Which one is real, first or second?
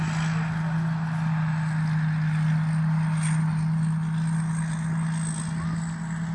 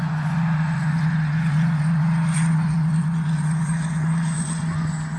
first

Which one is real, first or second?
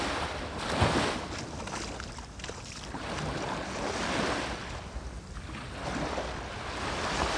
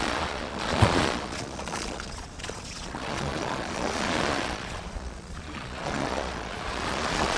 first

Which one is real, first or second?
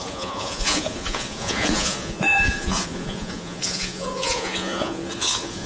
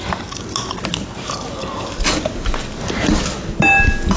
second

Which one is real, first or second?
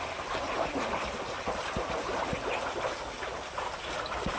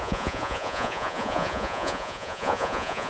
first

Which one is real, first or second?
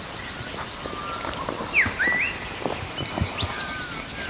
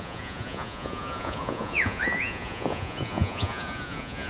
first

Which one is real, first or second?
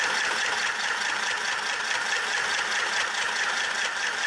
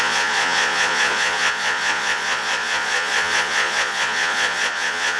first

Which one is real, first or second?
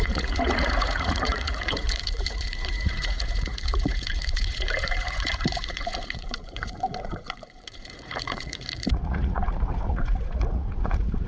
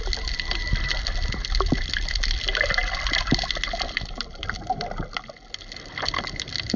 second